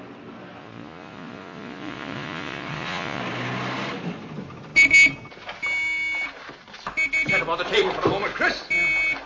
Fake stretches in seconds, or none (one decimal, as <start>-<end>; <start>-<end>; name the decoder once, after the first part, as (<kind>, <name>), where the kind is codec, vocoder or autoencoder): 0.6-3.2 (vocoder, Vocos)